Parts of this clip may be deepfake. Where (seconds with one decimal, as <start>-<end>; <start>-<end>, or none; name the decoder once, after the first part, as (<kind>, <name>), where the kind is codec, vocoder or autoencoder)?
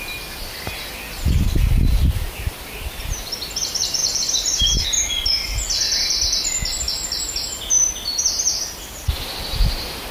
none